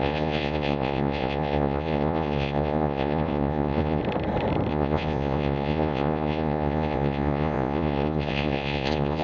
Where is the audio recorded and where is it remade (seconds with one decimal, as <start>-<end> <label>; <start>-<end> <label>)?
0.0-4.0 remade; 4.0-4.7 recorded; 4.7-9.2 remade